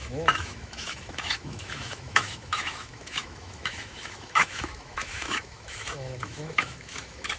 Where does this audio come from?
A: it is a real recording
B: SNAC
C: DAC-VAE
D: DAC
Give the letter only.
C